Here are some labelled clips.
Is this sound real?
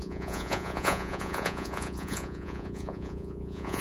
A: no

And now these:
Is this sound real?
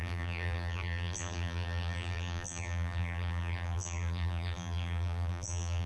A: no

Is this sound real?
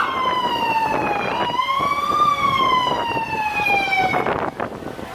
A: yes